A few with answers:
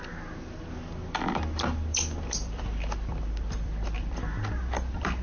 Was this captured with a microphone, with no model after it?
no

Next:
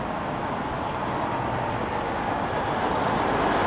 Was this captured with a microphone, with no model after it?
yes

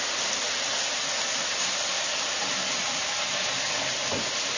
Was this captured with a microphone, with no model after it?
yes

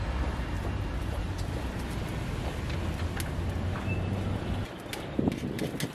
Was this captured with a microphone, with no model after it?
yes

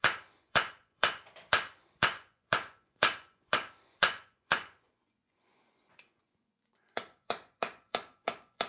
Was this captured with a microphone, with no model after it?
no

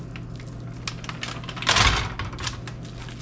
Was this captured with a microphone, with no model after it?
yes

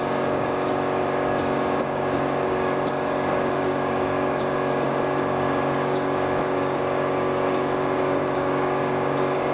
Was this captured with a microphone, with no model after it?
no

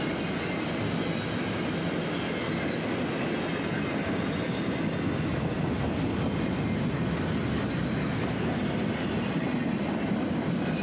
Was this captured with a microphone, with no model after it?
yes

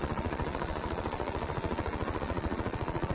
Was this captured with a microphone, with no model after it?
no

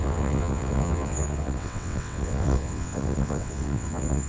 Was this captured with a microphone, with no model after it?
no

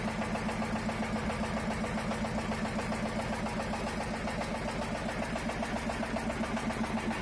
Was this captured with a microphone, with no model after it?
yes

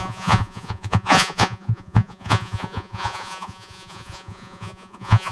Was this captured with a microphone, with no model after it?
no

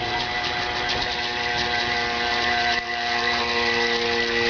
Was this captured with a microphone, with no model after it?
yes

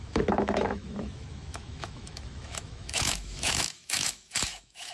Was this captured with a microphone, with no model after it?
no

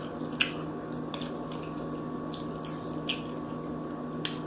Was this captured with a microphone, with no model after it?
yes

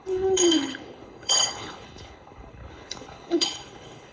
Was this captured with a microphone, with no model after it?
no